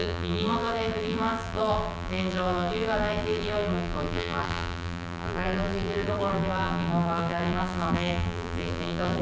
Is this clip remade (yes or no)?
yes